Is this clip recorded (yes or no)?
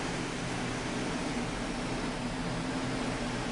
yes